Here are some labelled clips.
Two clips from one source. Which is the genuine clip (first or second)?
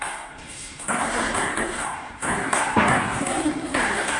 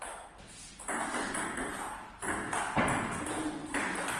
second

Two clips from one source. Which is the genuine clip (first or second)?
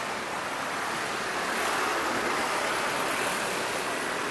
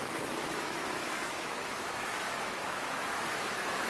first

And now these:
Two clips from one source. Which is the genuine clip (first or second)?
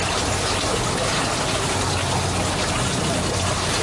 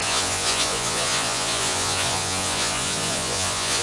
first